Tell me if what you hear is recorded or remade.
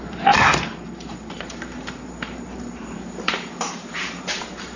remade